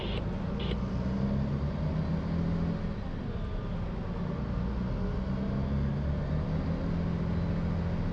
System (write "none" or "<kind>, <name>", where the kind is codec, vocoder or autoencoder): none